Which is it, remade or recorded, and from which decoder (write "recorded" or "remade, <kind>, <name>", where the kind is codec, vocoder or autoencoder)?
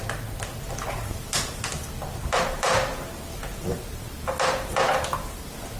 recorded